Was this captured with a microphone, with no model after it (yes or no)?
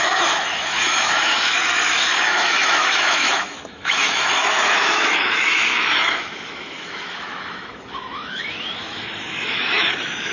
no